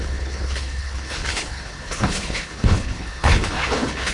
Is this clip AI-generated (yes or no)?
yes